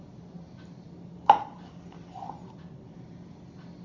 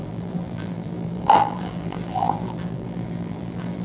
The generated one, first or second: second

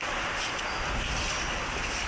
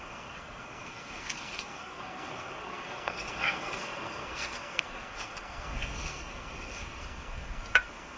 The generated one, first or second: second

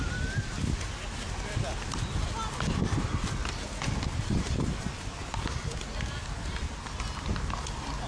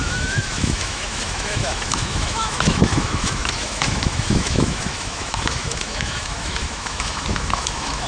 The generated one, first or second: second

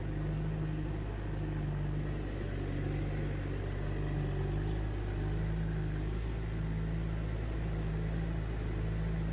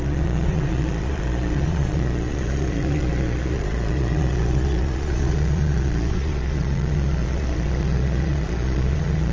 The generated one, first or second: second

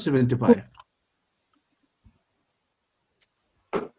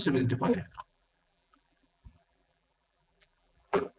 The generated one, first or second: second